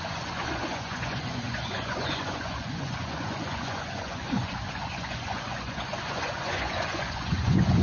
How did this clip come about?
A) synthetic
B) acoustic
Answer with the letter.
A